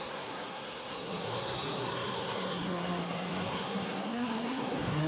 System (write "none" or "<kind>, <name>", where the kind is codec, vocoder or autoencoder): codec, SNAC